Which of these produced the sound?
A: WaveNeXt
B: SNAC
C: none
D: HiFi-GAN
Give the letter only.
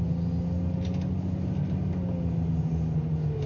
C